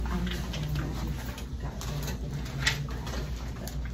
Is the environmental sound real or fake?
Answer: real